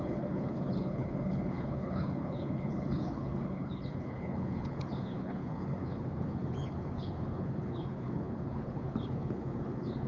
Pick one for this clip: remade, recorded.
remade